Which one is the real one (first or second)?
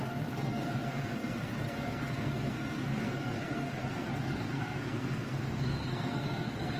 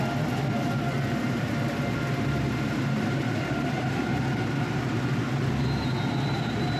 second